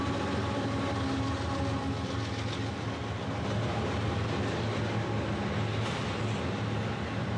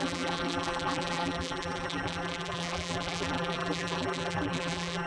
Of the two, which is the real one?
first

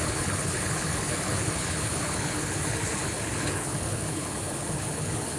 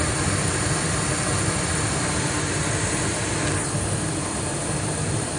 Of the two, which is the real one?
second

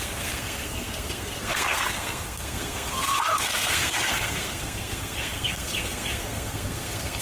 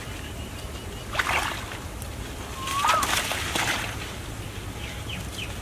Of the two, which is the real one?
second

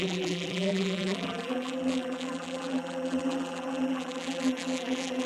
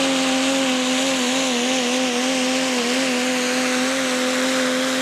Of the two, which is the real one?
second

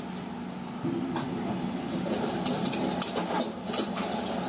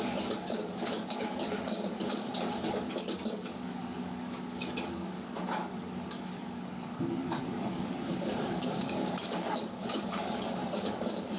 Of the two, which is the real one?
first